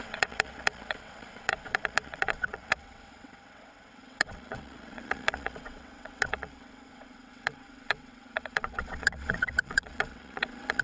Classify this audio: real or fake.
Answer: fake